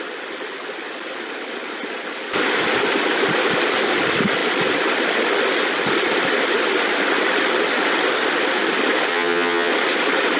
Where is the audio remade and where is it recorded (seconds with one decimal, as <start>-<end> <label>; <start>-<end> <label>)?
0.0-9.1 recorded; 9.1-9.7 remade; 9.7-10.4 recorded